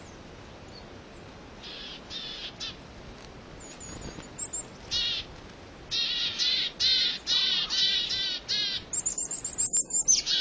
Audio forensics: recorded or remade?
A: recorded